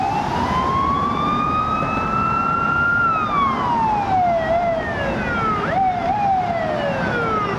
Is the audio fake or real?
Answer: real